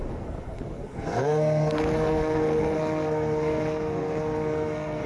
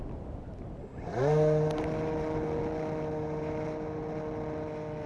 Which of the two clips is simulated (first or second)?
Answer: first